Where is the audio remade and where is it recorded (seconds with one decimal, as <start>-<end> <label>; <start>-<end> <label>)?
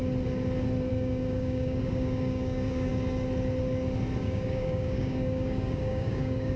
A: 0.0-0.9 recorded; 0.9-2.9 remade; 2.9-4.2 recorded; 4.2-6.6 remade